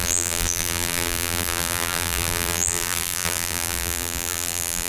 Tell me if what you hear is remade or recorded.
remade